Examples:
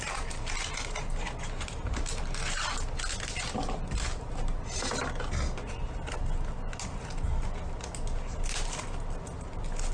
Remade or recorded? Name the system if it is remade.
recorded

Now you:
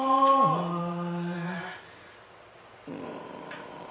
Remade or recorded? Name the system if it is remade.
recorded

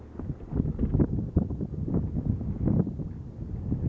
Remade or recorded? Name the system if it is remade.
recorded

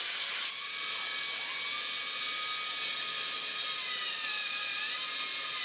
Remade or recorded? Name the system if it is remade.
recorded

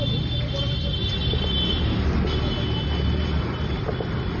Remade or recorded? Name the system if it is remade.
recorded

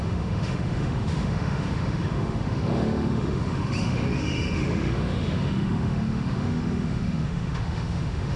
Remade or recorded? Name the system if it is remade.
remade, autoencoder, DAC-VAE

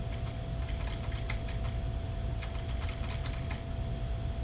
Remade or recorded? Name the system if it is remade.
recorded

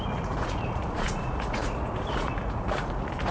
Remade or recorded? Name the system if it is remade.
remade, vocoder, Vocos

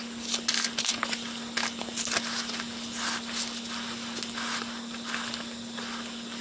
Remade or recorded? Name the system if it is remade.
recorded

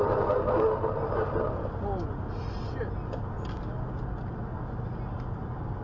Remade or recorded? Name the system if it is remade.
recorded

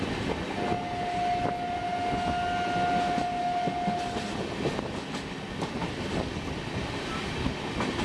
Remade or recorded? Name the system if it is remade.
recorded